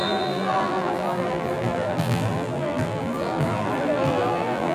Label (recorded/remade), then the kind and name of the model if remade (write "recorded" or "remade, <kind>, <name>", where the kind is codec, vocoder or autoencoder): remade, vocoder, BigVGAN v2